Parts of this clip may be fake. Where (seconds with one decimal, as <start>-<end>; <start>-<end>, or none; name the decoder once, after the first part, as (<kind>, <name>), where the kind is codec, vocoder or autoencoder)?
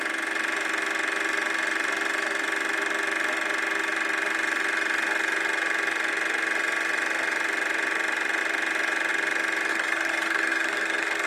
9.7-11.3 (codec, SNAC)